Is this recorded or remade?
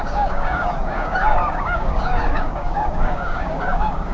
remade